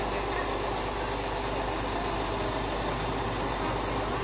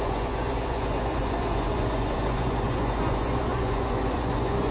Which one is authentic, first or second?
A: first